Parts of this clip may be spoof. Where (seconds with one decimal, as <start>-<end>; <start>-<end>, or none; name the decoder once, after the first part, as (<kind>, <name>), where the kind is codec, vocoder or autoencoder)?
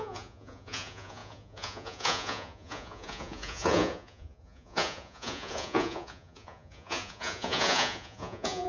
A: 0.0-8.7 (vocoder, Vocos)